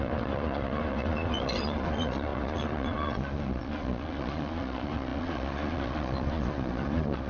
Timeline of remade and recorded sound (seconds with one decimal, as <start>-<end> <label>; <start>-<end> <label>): 0.0-7.3 remade